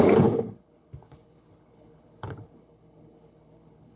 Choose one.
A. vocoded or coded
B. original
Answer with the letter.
A